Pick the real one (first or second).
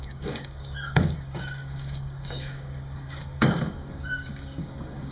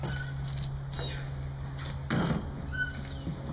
second